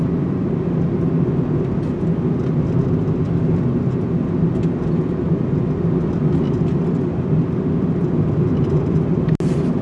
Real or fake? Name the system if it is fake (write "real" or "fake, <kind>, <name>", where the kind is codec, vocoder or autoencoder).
real